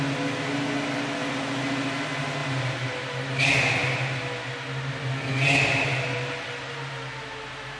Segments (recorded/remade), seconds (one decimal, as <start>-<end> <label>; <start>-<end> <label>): 0.0-7.8 recorded